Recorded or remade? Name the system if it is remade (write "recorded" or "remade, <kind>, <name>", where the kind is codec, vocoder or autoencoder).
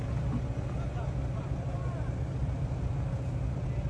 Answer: recorded